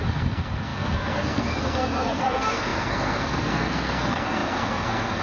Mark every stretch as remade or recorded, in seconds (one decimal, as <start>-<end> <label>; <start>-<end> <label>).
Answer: 0.0-5.2 remade